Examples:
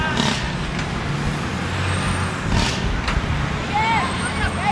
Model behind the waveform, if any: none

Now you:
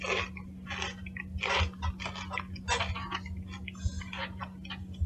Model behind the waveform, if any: none